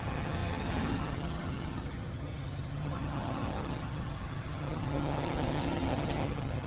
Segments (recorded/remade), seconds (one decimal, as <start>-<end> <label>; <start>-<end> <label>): 0.0-6.7 remade